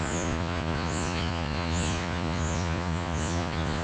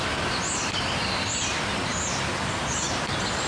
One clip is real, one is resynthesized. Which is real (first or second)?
second